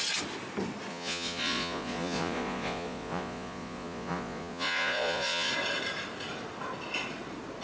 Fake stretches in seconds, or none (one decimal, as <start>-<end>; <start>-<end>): 0.9-5.5